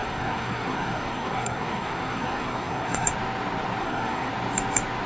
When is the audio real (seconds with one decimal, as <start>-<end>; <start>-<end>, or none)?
3.1-3.8; 4.3-5.1